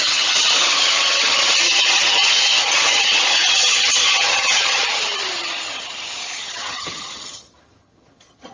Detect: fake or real fake